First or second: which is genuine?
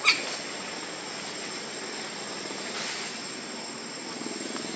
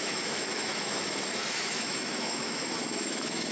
first